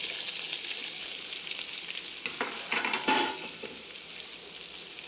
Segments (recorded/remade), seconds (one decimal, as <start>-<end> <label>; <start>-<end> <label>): 0.0-0.8 recorded; 0.8-3.9 remade; 3.9-5.1 recorded